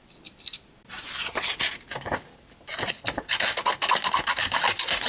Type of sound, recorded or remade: recorded